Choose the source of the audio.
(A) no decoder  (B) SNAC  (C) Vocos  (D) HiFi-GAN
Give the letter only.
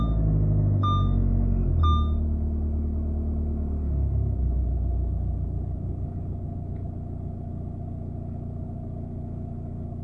A